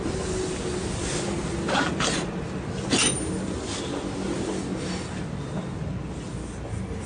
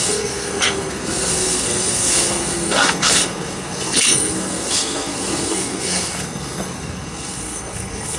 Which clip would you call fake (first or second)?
second